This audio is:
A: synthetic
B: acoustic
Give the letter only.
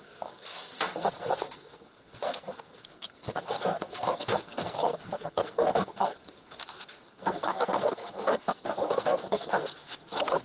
A